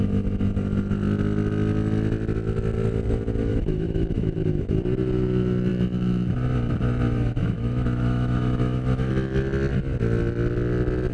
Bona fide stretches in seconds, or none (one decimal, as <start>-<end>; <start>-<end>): 0.0-3.5; 4.8-7.4; 9.1-11.1